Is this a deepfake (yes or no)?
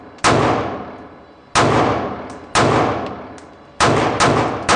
no